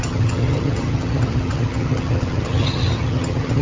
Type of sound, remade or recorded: remade